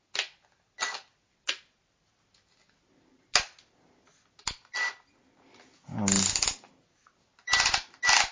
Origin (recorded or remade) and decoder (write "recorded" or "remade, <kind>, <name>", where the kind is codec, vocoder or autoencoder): recorded